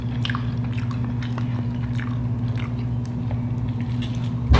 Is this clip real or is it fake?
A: real